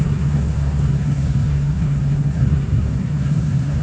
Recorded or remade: remade